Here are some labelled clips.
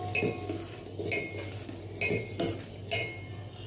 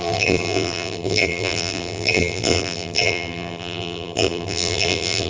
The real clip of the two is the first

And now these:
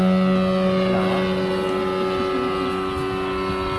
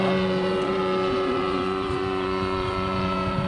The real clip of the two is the first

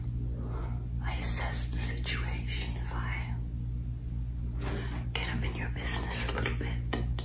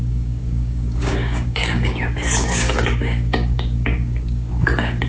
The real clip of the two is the first